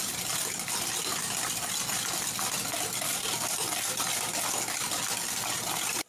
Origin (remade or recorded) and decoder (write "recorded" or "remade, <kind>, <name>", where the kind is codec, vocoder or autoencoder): recorded